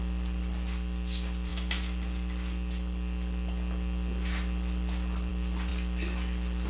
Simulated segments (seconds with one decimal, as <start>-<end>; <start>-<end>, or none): none